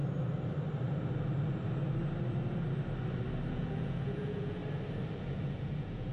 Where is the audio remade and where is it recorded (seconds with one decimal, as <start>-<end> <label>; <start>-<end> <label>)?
0.0-3.5 recorded; 3.5-4.6 remade; 4.6-5.2 recorded; 5.2-6.1 remade